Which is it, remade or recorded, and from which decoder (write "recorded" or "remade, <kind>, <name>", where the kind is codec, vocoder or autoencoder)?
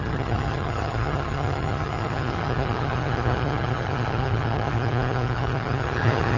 remade, vocoder, HiFi-GAN